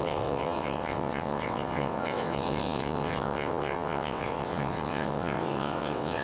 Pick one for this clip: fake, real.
fake